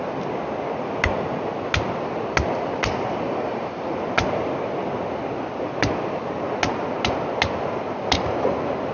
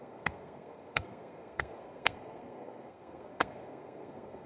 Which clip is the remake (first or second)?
second